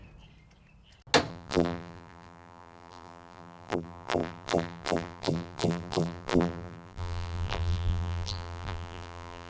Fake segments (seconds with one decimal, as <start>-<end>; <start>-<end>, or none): 1.3-9.5